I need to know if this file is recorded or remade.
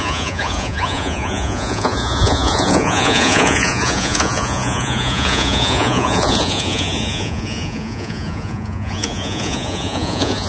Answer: remade